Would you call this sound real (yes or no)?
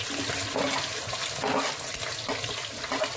yes